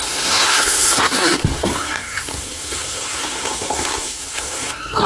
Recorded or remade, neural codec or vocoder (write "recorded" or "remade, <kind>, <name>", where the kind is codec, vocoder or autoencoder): remade, codec, SNAC